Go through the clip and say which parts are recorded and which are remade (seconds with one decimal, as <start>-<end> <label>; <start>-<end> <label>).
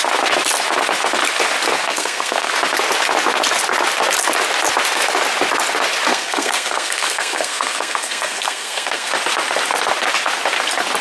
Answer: 0.0-1.9 recorded; 1.9-2.5 remade; 2.5-6.1 recorded; 6.1-9.1 remade; 9.1-11.0 recorded